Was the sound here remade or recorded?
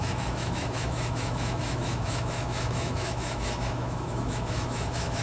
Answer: remade